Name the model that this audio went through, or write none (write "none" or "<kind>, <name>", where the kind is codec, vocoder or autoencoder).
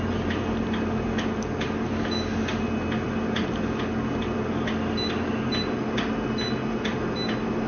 none